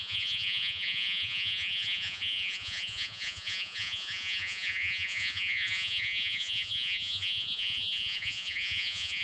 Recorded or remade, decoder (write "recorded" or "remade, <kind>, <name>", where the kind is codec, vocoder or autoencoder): remade, vocoder, Vocos